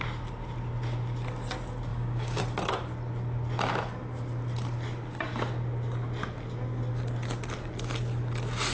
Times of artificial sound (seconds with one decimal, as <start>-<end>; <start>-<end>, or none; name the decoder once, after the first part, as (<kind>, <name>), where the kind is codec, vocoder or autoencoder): 1.9-2.4 (codec, DAC)